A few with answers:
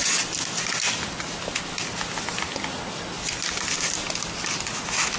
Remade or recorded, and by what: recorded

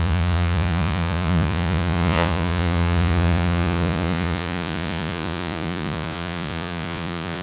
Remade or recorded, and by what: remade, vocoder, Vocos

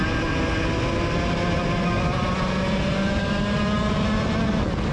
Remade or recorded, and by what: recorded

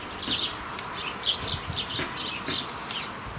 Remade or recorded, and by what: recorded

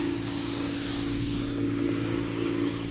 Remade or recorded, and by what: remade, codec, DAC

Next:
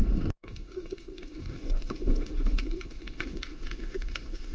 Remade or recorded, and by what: remade, autoencoder, DAC-VAE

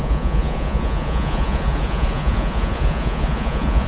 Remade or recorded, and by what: remade, vocoder, Vocos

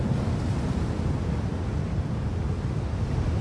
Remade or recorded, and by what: recorded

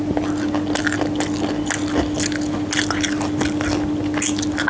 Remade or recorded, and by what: recorded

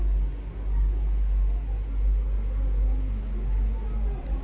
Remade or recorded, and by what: recorded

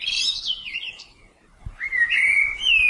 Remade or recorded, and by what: remade, vocoder, BigVGAN v2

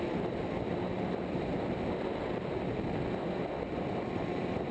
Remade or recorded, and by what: remade, vocoder, BigVGAN v2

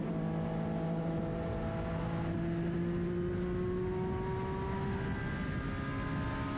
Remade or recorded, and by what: recorded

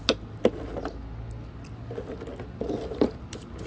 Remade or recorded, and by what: recorded